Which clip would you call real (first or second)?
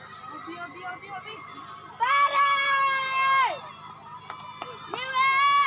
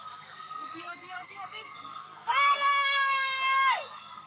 first